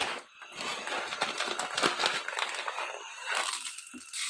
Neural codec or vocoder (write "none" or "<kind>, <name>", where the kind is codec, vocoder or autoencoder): none